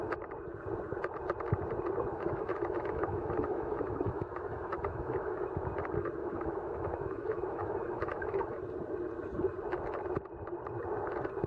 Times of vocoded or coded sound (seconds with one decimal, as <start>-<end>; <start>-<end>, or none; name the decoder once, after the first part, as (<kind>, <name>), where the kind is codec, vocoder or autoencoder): 2.1-5.5 (autoencoder, DAC-VAE); 6.2-8.6